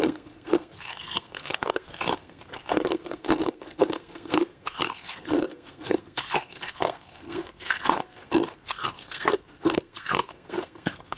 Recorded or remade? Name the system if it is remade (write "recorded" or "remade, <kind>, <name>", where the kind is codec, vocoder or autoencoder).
remade, codec, SNAC